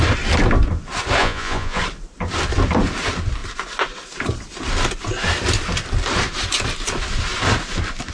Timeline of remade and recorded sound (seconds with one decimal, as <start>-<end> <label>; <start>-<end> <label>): 0.0-1.2 recorded; 1.2-1.8 remade; 1.8-8.1 recorded